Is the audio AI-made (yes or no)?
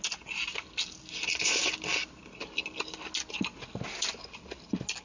no